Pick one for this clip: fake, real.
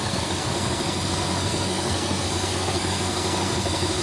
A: fake